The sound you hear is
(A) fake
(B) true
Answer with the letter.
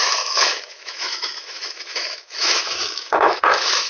A